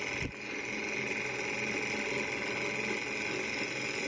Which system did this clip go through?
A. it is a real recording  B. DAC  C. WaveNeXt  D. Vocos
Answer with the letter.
A